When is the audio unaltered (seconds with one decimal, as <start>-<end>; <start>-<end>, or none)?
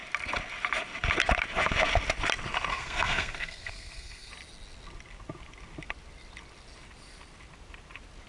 0.0-2.7; 4.3-8.3